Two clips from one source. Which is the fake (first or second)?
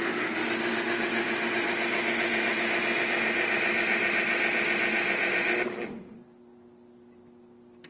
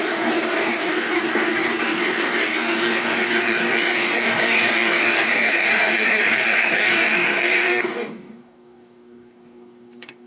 second